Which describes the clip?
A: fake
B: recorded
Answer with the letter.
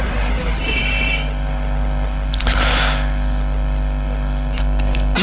B